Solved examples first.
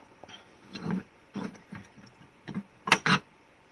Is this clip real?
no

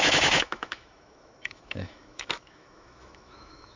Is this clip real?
no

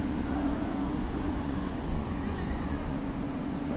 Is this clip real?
no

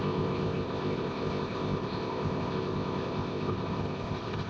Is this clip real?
no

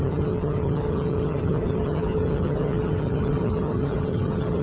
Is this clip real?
no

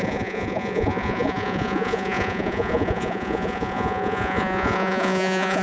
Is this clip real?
no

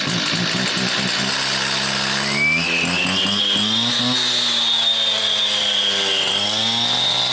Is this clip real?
yes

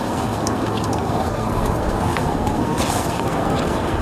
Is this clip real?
no